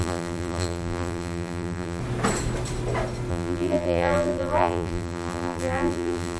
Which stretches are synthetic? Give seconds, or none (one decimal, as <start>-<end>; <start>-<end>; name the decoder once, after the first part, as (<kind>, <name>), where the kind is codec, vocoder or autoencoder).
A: 0.0-2.0 (vocoder, BigVGAN v2); 3.3-6.4